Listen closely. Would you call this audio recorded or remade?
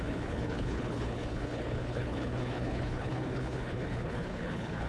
remade